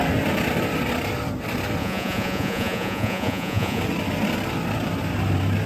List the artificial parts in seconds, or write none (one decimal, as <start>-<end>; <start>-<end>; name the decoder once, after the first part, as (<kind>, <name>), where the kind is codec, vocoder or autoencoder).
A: 1.8-3.8 (vocoder, Vocos)